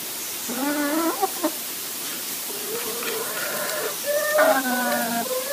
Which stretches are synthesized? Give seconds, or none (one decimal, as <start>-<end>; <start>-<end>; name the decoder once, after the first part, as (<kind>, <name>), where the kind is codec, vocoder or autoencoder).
0.0-0.6 (vocoder, BigVGAN v2); 1.2-5.5